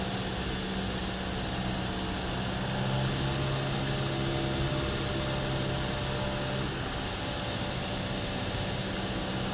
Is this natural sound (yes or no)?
yes